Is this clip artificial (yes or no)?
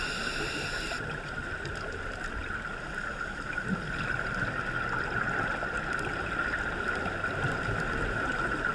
no